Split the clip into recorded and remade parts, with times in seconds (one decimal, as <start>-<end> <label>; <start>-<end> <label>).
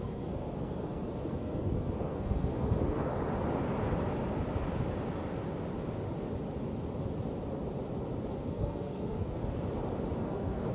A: 0.0-3.1 remade; 3.1-8.3 recorded; 8.3-9.4 remade; 9.4-10.2 recorded; 10.2-10.7 remade